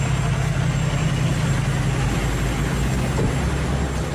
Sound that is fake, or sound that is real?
real